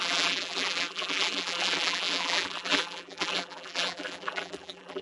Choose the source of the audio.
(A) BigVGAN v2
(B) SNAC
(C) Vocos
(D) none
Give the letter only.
A